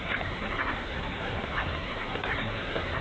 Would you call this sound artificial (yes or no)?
yes